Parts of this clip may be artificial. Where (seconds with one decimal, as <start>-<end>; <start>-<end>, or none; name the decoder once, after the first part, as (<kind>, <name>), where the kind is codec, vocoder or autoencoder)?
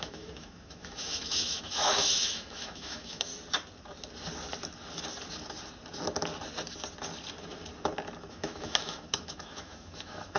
0.0-3.3 (autoencoder, DAC-VAE); 8.3-10.4